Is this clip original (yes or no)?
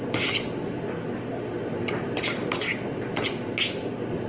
yes